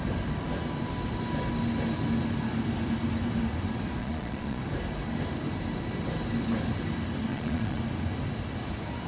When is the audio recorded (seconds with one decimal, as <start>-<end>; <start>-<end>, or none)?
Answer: 0.0-4.0; 4.6-7.3; 7.8-9.1